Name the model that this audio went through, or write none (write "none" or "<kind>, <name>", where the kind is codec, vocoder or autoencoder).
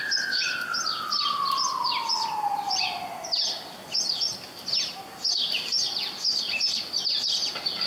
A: none